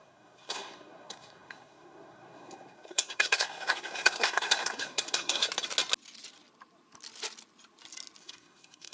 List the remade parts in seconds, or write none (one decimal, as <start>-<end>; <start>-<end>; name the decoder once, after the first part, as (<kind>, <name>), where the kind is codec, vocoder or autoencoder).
0.0-5.4 (codec, SNAC); 8.2-8.9